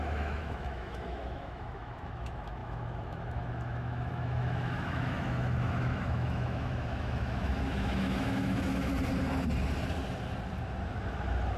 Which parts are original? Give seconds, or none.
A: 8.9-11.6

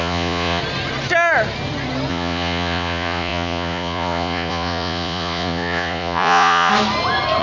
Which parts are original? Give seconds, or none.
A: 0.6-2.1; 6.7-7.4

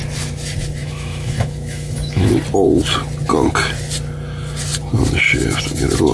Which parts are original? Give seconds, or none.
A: 0.0-0.8; 2.3-6.1

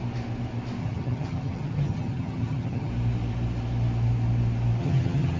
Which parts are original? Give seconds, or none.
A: 0.0-0.8; 2.9-4.8